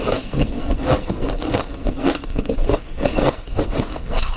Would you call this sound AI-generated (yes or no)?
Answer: yes